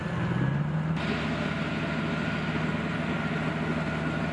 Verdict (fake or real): real